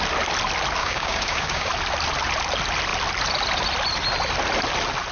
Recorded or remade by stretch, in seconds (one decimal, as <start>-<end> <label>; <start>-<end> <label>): 0.0-0.8 recorded; 0.8-1.7 remade; 1.7-5.1 recorded